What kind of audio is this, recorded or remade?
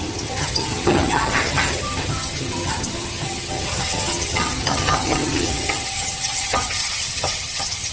remade